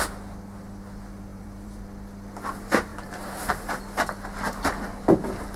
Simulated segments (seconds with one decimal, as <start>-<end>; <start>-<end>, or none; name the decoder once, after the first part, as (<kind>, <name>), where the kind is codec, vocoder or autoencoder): 1.3-1.8 (vocoder, BigVGAN v2); 2.9-3.8